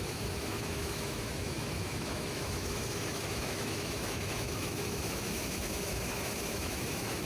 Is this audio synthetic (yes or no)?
yes